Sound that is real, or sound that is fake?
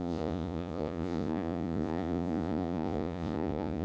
fake